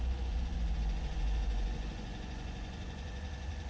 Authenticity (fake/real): fake